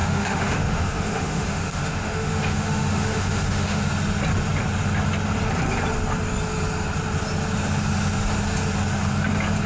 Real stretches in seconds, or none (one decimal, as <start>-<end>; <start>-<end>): 3.9-9.7